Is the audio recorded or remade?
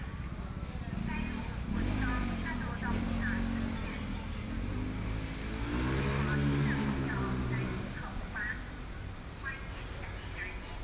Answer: recorded